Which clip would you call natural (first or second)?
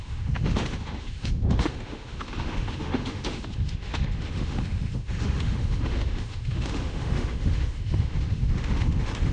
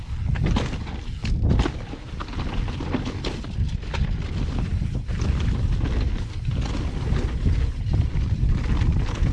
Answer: second